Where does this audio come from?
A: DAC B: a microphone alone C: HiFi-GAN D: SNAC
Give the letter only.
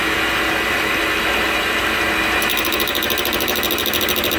B